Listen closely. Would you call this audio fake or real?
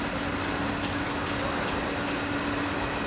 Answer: real